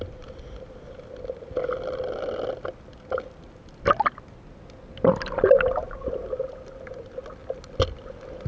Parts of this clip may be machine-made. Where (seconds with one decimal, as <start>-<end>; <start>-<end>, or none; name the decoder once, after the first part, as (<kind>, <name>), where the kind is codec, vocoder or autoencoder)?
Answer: none